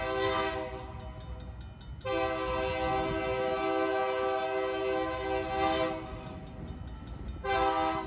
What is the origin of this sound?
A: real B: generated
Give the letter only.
A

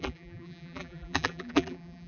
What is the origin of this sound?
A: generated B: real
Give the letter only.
A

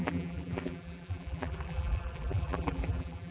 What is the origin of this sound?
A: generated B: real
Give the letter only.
A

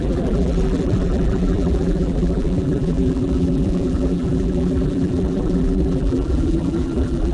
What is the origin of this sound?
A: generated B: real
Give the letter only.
A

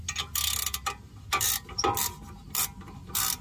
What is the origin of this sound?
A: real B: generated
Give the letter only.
A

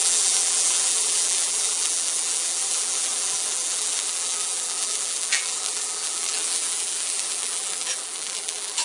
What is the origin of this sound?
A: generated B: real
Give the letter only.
A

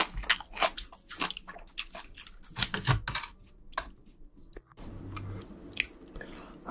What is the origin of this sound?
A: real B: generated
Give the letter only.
A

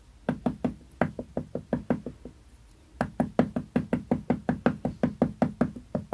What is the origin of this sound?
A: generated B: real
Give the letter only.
B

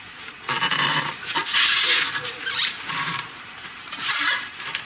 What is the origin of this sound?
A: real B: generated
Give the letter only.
B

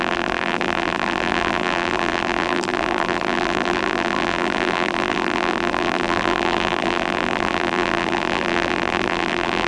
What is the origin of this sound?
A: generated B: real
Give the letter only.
A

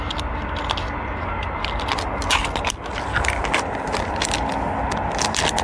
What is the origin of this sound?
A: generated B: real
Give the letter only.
B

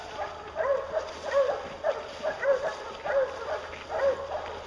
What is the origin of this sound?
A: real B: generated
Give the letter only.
A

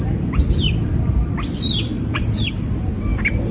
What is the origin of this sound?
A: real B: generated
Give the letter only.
B